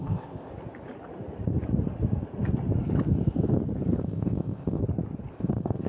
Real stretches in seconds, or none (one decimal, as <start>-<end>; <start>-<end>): 0.5-4.0; 4.8-5.3